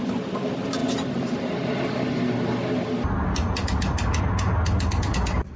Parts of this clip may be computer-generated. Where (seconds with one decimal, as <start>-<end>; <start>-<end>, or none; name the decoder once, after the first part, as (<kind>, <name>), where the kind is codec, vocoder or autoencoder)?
none